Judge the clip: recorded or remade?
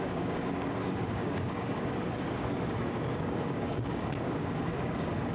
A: remade